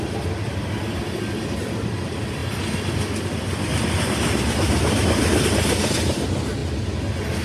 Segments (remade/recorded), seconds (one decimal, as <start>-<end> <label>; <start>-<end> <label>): 0.0-7.4 recorded